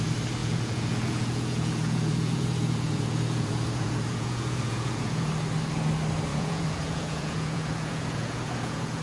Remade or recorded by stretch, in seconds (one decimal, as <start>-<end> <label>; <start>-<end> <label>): 0.0-0.4 recorded; 0.4-5.3 remade; 5.3-6.3 recorded; 6.3-9.0 remade